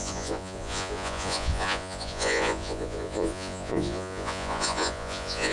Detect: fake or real fake